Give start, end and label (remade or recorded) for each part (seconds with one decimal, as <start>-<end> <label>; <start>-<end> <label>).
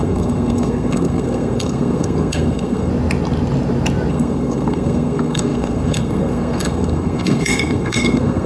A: 0.0-2.9 remade; 2.9-4.1 recorded; 4.1-8.5 remade